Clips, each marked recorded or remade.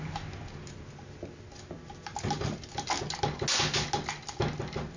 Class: recorded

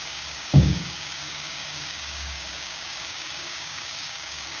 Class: remade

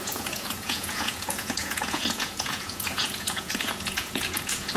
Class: remade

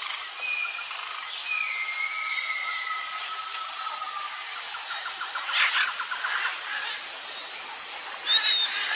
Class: recorded